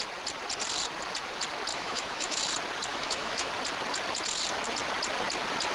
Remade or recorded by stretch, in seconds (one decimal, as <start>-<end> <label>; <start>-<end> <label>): 0.0-1.7 recorded; 1.7-2.4 remade; 2.4-2.9 recorded; 2.9-3.5 remade; 3.5-5.7 recorded